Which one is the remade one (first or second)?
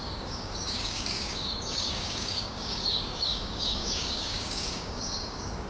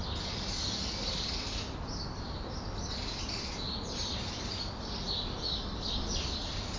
first